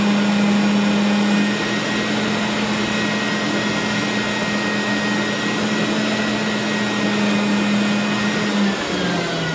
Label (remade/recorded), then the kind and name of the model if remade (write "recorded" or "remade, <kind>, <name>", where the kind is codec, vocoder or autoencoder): recorded